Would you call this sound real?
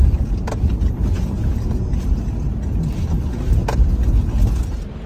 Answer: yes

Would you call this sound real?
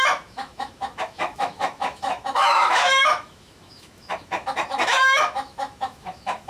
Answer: no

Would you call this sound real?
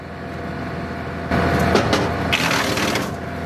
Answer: yes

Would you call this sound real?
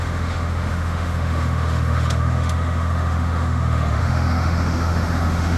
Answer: no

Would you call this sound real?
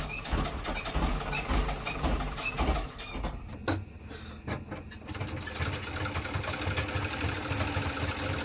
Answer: yes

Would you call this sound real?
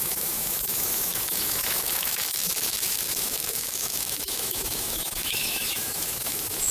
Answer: no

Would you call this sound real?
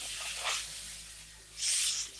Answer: yes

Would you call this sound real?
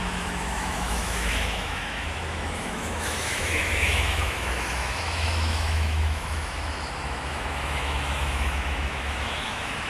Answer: no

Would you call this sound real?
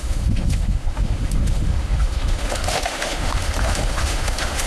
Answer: no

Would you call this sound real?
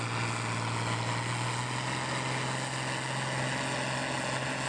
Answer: yes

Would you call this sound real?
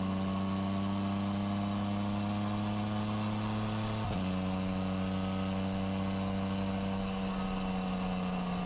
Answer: yes